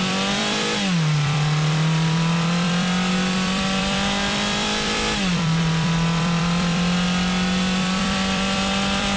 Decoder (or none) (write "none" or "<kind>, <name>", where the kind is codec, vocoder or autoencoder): vocoder, BigVGAN v2